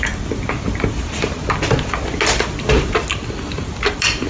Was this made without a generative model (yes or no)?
yes